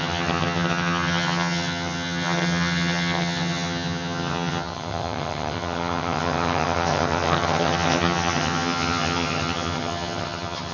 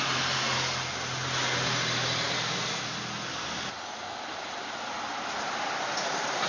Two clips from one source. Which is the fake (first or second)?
first